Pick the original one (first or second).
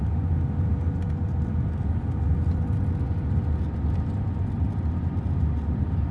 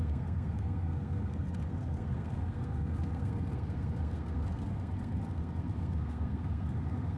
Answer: first